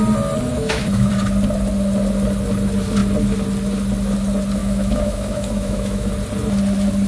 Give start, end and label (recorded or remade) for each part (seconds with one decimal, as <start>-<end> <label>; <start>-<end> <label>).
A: 0.0-0.5 recorded; 0.5-1.1 remade; 1.1-4.6 recorded; 4.6-6.1 remade; 6.1-7.1 recorded